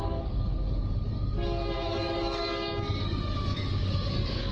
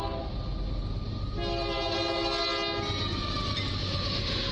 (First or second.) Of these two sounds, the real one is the second